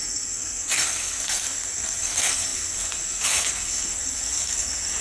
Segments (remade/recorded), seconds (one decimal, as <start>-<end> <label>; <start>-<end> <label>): 0.0-5.0 remade